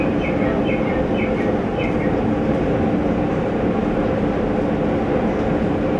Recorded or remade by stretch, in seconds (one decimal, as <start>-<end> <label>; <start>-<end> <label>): 0.0-1.7 recorded; 1.7-4.1 remade; 4.1-6.0 recorded